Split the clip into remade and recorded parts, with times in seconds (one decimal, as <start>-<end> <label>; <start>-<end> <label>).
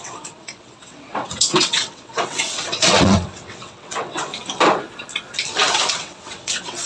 0.0-4.3 remade; 4.3-5.9 recorded; 5.9-6.9 remade